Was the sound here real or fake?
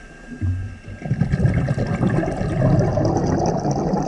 real